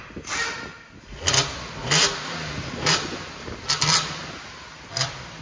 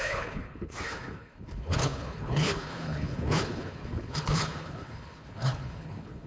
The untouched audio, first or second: first